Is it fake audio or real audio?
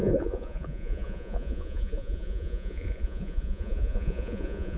fake